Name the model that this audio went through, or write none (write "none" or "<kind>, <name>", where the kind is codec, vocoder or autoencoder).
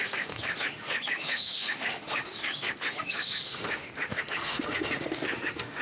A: autoencoder, DAC-VAE